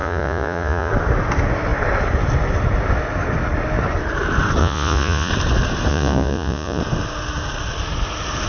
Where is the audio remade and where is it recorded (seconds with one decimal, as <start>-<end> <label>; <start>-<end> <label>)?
0.0-0.9 remade; 0.9-4.6 recorded; 4.6-5.3 remade; 5.3-5.9 recorded; 5.9-6.8 remade; 6.8-8.5 recorded